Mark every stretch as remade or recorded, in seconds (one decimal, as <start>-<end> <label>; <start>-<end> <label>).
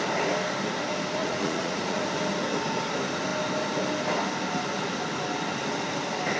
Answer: 0.0-1.2 recorded; 1.2-2.0 remade; 2.0-6.4 recorded